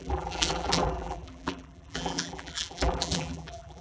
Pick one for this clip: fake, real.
fake